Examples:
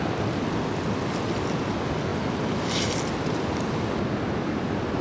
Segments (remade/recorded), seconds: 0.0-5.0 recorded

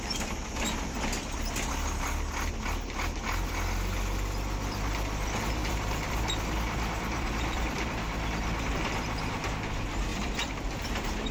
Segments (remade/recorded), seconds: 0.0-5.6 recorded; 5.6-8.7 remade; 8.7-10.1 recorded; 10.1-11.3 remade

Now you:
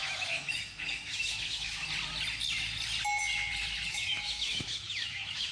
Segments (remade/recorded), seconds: 0.0-1.8 remade; 1.8-3.9 recorded; 3.9-5.5 remade

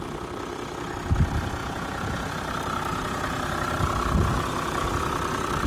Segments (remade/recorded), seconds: 0.0-1.6 recorded; 1.6-2.3 remade; 2.3-2.9 recorded; 2.9-3.5 remade; 3.5-5.7 recorded

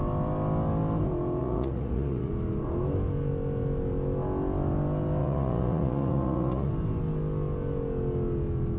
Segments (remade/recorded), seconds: 0.0-1.4 recorded; 1.4-2.3 remade; 2.3-5.2 recorded; 5.2-6.7 remade; 6.7-8.8 recorded

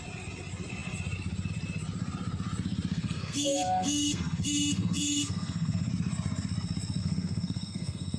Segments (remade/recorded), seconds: 0.0-2.9 recorded; 2.9-5.9 remade; 5.9-7.0 recorded; 7.0-8.2 remade

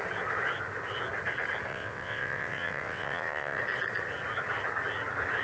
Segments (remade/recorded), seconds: 0.0-1.7 recorded; 1.7-3.6 remade; 3.6-5.4 recorded

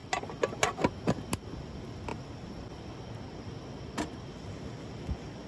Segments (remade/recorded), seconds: 0.0-5.5 recorded